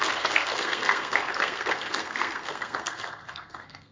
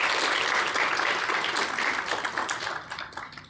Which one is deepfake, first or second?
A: first